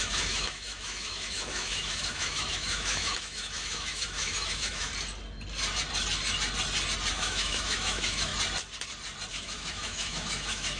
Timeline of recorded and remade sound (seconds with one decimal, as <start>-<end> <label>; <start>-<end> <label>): 0.0-4.9 remade; 4.9-7.1 recorded; 7.1-8.3 remade; 8.3-9.3 recorded; 9.3-10.8 remade